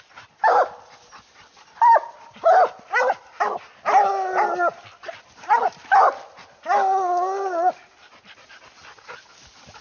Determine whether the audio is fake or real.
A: real